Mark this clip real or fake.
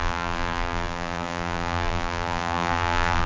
fake